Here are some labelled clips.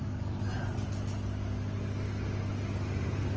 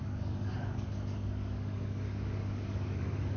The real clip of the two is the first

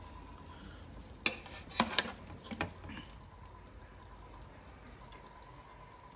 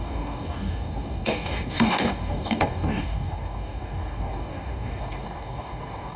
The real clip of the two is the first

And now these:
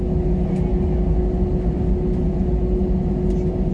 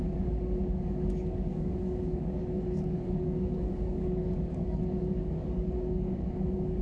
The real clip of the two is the first